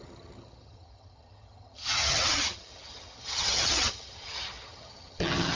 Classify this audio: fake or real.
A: fake